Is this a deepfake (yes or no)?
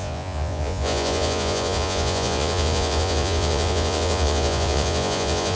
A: yes